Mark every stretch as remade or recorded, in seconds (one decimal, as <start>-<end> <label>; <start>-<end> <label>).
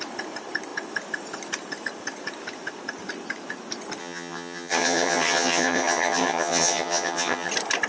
0.0-4.0 recorded; 4.0-7.5 remade; 7.5-7.9 recorded